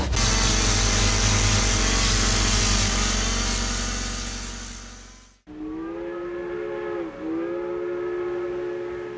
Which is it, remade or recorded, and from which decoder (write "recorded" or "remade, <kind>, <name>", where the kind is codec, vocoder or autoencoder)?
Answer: recorded